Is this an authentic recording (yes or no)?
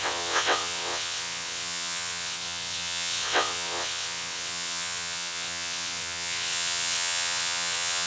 no